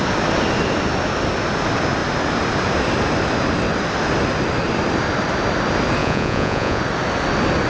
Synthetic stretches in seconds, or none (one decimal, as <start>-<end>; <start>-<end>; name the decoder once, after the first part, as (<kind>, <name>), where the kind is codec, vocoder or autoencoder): 6.0-6.8 (vocoder, Vocos)